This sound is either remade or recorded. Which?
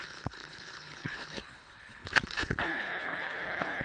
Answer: remade